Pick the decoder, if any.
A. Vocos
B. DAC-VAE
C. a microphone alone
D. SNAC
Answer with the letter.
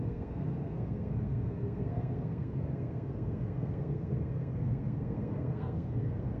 D